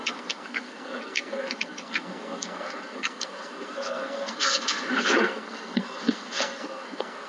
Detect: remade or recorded remade